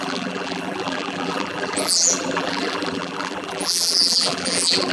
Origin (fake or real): fake